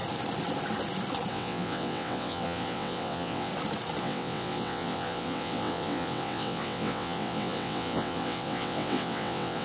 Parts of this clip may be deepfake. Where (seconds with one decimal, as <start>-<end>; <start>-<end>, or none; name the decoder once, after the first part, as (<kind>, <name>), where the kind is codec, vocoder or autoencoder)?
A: 1.3-3.5 (vocoder, WaveNeXt); 4.0-9.6